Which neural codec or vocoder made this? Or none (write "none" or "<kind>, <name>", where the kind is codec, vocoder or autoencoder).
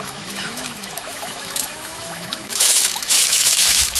autoencoder, DAC-VAE